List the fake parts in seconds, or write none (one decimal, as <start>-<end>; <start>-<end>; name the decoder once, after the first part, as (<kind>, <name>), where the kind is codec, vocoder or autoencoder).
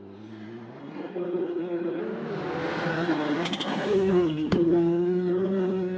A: 0.8-2.0 (codec, SNAC); 2.9-6.0